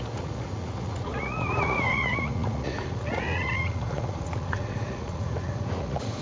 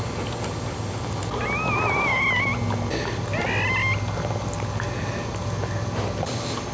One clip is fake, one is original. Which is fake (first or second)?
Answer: first